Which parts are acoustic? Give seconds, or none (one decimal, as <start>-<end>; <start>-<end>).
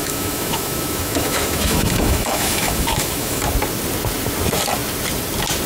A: 3.4-5.7